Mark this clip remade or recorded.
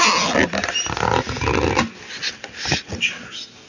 recorded